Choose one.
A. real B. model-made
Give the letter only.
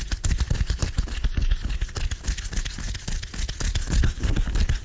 A